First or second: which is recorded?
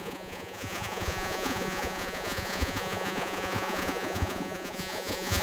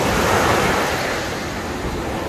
second